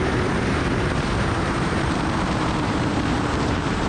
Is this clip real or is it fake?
fake